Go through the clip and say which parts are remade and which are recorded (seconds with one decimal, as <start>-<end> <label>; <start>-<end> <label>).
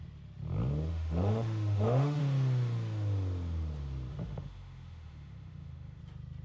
0.0-0.9 recorded; 0.9-2.2 remade; 2.2-4.1 recorded; 4.1-6.0 remade; 6.0-6.4 recorded